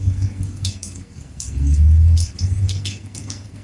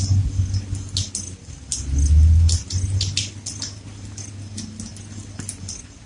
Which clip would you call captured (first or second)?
second